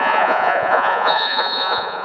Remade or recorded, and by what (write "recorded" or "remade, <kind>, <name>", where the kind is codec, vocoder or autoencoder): remade, vocoder, Vocos